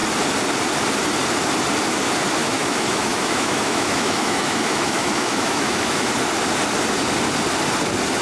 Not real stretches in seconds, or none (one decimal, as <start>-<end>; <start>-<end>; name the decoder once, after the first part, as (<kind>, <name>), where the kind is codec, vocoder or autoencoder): 2.4-6.1 (autoencoder, DAC-VAE)